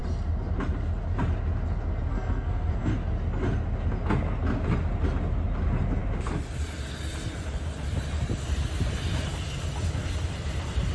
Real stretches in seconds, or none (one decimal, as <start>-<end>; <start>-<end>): 0.0-2.1; 2.9-10.9